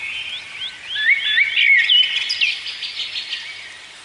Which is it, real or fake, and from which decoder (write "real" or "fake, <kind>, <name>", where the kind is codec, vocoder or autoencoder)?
real